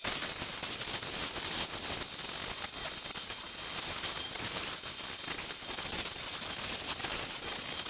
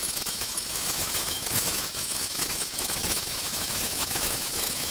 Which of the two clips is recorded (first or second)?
first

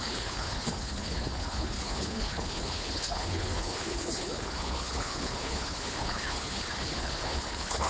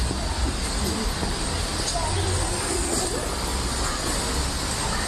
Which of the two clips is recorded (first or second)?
second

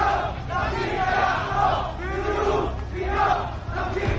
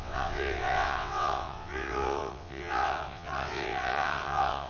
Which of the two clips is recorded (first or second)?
first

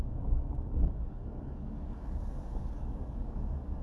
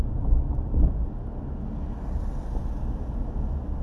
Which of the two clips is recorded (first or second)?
second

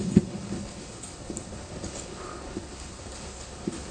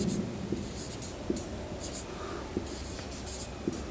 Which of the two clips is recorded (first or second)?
second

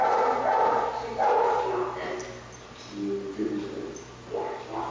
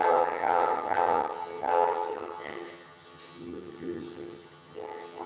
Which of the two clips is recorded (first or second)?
first